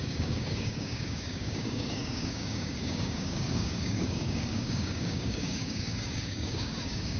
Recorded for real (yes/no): no